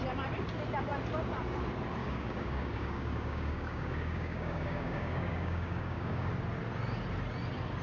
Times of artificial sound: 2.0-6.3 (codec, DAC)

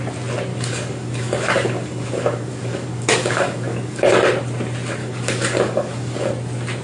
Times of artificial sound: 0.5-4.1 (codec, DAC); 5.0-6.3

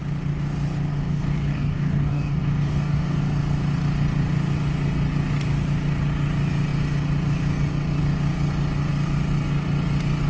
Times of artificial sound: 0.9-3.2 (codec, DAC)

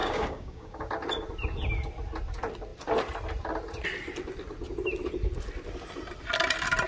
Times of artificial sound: 0.0-0.9 (codec, DAC)

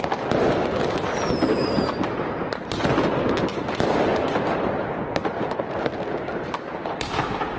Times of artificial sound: none

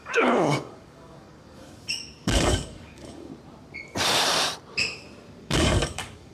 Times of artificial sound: 0.0-3.3 (codec, DAC); 5.4-6.3